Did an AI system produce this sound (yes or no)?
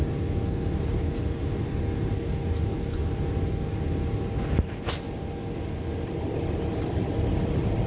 no